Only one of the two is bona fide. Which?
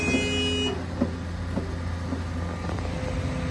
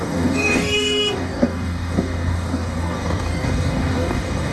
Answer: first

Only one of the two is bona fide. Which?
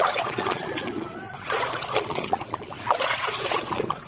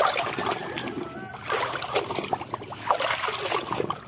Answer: second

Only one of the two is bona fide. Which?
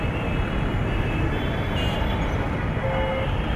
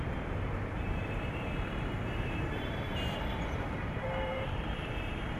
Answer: first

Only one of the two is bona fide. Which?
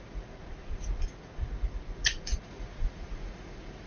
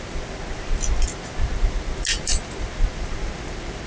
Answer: second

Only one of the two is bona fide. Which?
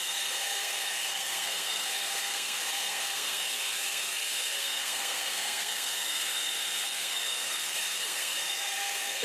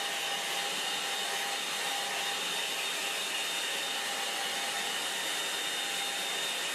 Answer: second